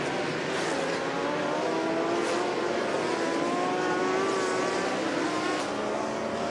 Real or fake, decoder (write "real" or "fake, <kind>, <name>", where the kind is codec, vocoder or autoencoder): real